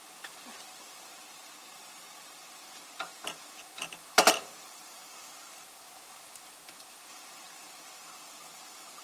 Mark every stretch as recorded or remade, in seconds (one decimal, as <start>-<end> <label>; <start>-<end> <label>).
0.0-9.0 remade